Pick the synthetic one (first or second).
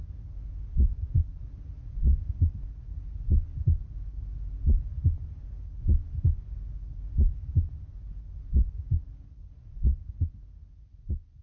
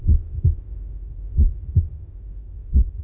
second